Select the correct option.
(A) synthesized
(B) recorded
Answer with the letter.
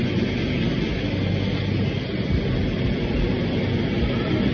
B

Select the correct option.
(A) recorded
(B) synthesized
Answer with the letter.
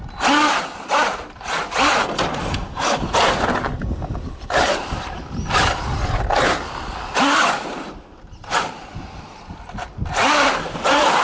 A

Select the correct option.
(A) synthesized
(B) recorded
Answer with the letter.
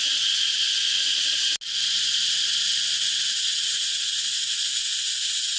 B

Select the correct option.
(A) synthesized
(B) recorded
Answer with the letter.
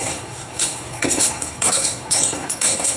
A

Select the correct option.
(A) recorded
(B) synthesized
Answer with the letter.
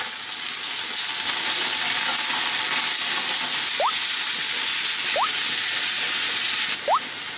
A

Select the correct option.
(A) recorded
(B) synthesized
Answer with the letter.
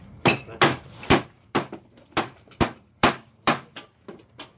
B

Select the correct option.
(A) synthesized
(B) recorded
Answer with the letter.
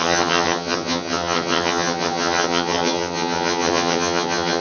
A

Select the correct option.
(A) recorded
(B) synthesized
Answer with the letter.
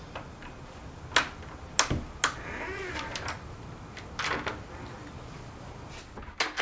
A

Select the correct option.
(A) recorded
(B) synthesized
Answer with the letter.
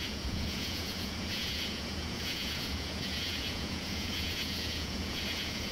B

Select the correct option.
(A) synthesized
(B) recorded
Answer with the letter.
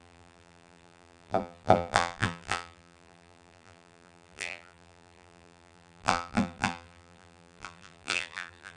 A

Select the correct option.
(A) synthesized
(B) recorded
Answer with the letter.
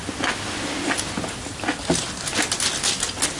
B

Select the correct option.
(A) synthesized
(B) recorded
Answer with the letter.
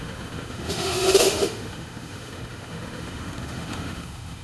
A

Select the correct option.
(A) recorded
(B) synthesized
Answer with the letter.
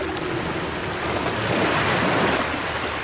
A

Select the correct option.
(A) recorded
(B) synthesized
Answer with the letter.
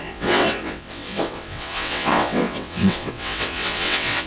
B